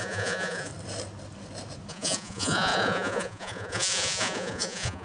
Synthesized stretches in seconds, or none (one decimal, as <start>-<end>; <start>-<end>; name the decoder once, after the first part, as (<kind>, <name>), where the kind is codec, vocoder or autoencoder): 0.0-0.7 (vocoder, Vocos); 1.9-5.0